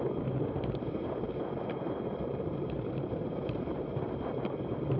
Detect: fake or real fake